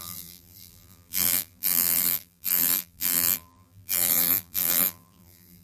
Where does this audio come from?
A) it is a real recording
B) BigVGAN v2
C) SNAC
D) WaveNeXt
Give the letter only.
B